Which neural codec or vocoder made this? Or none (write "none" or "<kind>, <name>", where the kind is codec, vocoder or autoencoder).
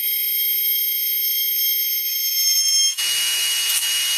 autoencoder, DAC-VAE